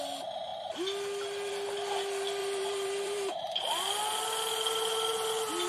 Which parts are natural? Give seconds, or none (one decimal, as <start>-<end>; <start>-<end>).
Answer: 0.0-2.4; 3.7-5.7